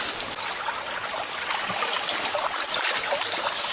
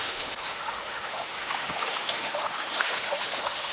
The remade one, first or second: second